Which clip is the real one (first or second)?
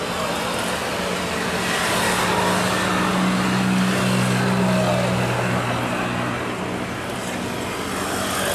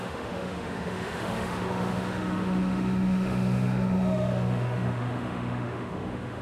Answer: first